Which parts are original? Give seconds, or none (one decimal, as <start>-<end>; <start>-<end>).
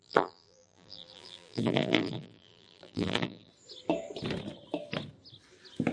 3.5-5.9